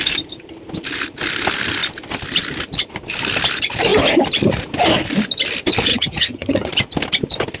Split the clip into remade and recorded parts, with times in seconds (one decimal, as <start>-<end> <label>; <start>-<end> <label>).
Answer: 0.0-5.9 recorded; 5.9-6.7 remade; 6.7-7.6 recorded